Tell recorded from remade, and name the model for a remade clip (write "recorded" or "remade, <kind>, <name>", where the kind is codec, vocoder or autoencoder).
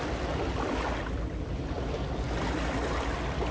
recorded